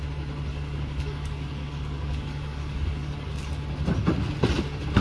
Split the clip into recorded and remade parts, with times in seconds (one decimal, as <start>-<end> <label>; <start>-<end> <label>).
0.0-0.5 recorded; 0.5-3.5 remade; 3.5-5.0 recorded